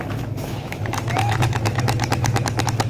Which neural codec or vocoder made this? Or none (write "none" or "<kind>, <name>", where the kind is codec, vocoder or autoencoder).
autoencoder, DAC-VAE